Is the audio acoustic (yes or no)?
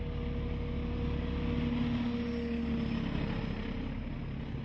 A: yes